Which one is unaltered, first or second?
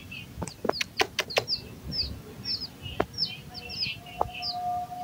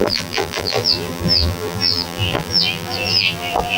first